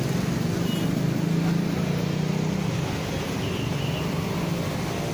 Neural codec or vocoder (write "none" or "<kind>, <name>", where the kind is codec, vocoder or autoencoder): none